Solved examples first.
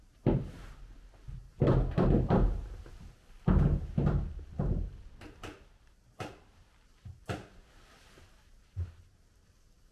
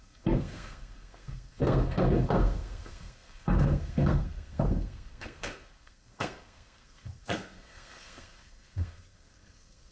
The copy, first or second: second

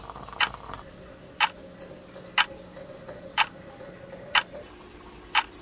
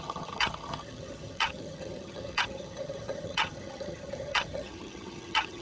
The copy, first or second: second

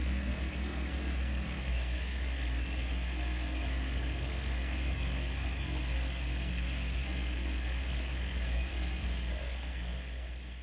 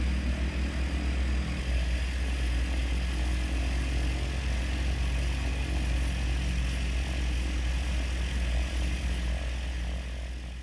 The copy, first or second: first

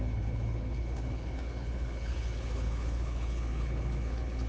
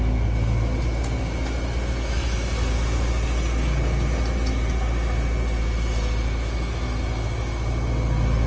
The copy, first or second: first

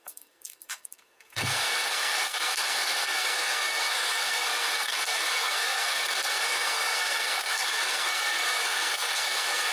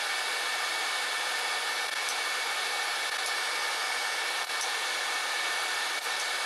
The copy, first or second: first